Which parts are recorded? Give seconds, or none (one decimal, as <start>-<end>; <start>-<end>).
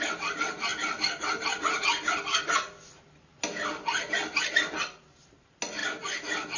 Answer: 0.0-6.6